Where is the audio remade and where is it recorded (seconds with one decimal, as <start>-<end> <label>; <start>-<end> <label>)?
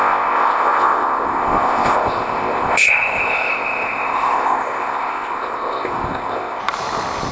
0.0-6.6 remade; 6.6-7.3 recorded